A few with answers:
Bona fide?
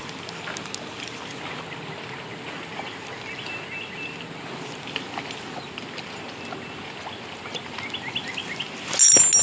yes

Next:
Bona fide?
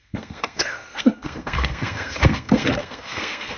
no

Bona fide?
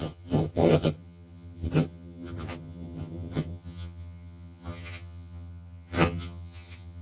no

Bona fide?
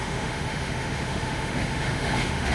no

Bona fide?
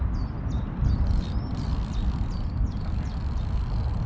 yes